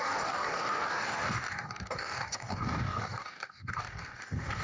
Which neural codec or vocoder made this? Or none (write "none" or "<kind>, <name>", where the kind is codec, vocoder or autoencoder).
codec, DAC